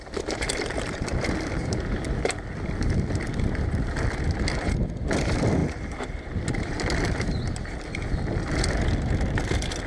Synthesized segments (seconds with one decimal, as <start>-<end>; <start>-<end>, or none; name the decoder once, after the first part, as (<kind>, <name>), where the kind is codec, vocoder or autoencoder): none